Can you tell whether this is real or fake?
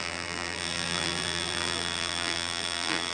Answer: fake